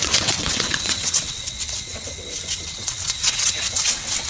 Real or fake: fake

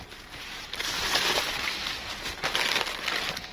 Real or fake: real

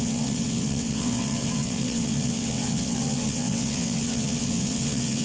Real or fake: fake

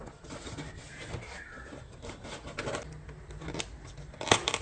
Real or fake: real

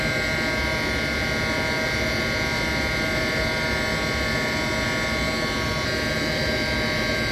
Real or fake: real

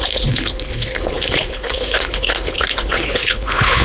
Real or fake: fake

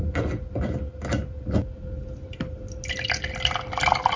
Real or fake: real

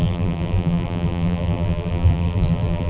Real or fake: fake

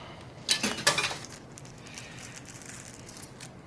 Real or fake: real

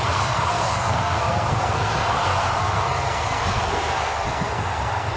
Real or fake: fake